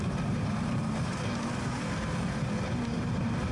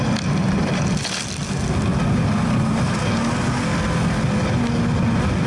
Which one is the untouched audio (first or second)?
second